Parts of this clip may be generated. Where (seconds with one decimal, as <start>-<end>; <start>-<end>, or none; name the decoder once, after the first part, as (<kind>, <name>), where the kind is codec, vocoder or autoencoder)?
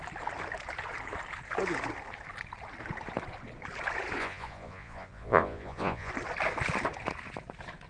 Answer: 4.2-6.1 (vocoder, Vocos)